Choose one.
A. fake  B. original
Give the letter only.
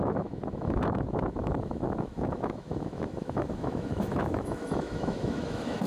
A